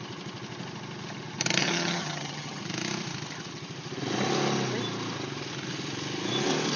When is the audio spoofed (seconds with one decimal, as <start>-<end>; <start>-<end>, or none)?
1.6-2.6